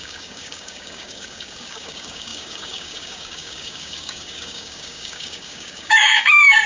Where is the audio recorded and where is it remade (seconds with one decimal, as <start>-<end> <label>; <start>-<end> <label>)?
0.0-6.7 remade